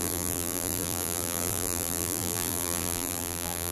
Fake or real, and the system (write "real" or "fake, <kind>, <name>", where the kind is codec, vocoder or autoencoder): fake, vocoder, BigVGAN v2